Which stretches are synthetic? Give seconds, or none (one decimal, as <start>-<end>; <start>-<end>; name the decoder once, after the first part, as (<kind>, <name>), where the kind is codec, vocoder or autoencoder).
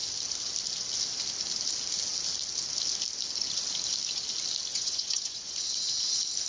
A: 4.7-5.7 (vocoder, Vocos)